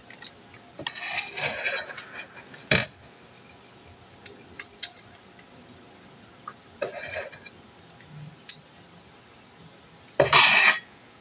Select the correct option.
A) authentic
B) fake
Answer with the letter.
A